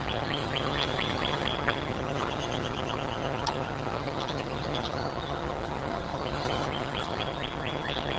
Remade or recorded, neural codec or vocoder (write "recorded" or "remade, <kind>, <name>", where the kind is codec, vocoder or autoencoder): remade, vocoder, HiFi-GAN